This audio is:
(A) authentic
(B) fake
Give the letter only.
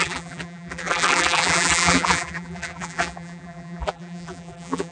B